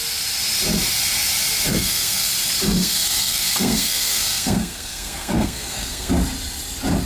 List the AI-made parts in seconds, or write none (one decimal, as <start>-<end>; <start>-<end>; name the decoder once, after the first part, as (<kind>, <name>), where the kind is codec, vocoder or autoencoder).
1.7-2.3 (codec, SNAC); 2.8-6.1